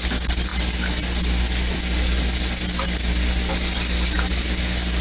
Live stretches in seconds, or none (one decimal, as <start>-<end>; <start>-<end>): 0.0-5.0